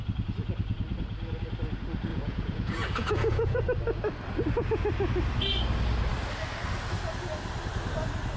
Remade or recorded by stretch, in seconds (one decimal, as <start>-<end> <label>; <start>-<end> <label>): 0.0-2.1 recorded; 2.1-3.6 remade; 3.6-8.4 recorded